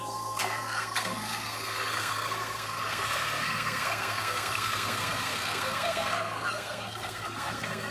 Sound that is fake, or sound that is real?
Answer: fake